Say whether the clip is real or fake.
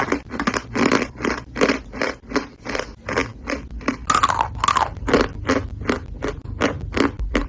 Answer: real